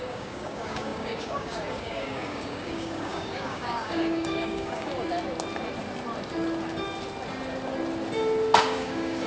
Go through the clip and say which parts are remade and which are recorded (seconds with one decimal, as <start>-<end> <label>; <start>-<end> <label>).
0.0-4.9 remade; 4.9-8.6 recorded; 8.6-9.3 remade